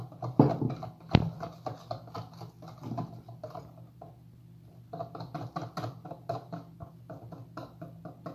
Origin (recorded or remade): recorded